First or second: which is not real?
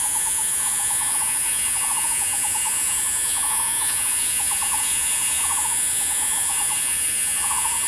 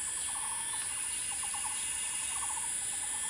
first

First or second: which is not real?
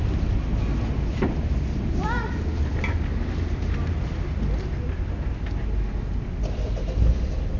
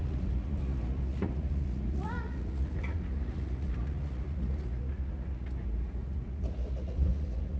second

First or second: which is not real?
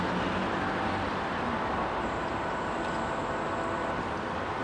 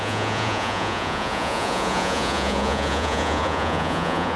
second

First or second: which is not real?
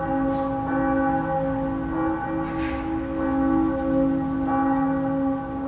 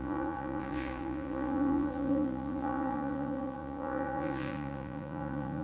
second